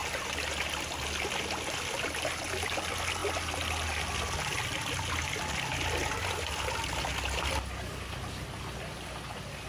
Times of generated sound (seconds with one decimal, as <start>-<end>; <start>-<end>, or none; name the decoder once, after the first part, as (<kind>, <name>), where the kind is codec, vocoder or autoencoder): none